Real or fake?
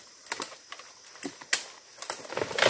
real